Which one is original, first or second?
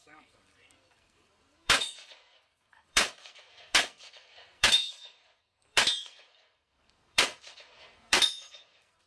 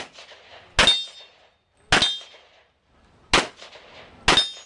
second